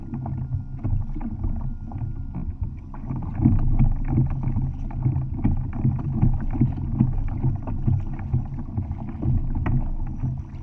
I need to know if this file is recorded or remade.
recorded